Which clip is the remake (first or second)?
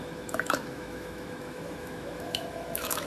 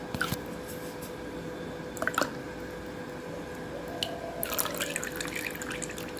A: first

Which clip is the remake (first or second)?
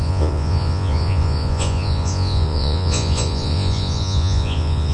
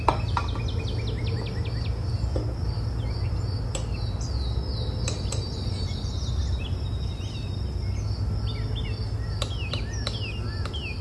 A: first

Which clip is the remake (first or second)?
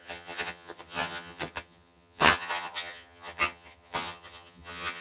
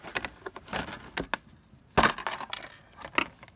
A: first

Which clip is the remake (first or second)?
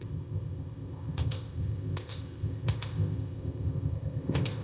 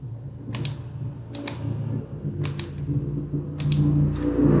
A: first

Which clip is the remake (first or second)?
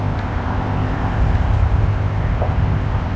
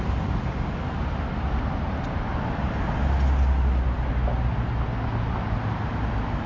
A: first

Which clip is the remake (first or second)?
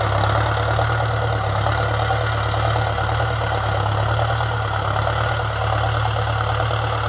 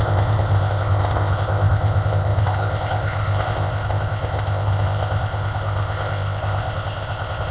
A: second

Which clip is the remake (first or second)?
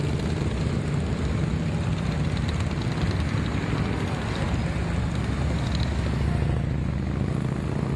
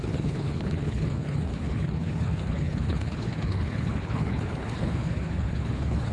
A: second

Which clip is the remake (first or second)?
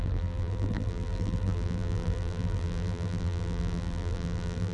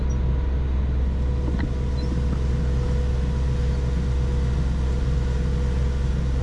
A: first